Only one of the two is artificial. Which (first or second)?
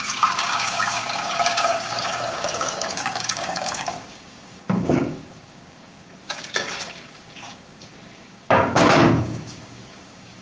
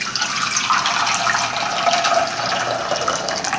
first